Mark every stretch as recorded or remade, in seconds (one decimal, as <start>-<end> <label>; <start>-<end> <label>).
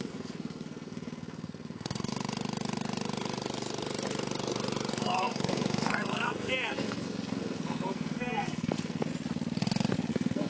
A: 0.0-2.1 remade; 2.1-4.9 recorded; 4.9-9.1 remade; 9.1-10.1 recorded; 10.1-10.5 remade